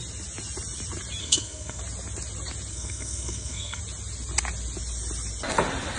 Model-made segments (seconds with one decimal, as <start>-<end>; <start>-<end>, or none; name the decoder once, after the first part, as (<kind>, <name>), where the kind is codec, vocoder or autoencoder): 1.2-1.8 (codec, SNAC); 2.7-3.8